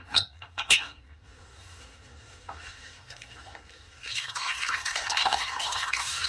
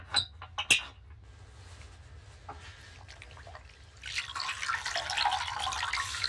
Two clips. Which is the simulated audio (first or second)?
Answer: first